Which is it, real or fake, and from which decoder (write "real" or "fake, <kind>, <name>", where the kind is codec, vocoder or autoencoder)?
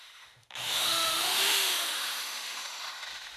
fake, autoencoder, DAC-VAE